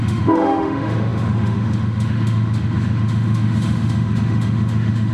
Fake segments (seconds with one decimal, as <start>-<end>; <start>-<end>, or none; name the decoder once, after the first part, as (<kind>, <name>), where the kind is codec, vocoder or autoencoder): 0.0-5.1 (autoencoder, DAC-VAE)